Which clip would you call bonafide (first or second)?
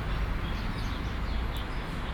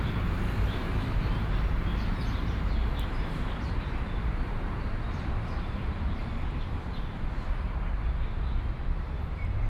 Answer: first